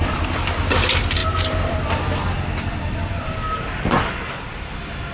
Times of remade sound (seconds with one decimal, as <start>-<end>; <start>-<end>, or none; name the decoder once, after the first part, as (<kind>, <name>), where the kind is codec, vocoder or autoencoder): none